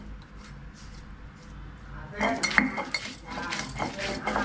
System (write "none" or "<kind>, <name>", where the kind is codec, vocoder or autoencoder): none